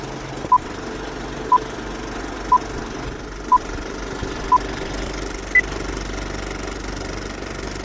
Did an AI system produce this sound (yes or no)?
no